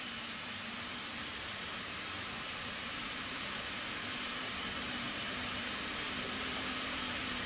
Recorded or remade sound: remade